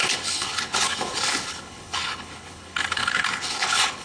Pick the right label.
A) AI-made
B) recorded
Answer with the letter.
A